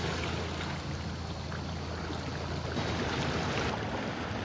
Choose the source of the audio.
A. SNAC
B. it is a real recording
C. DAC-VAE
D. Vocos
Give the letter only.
B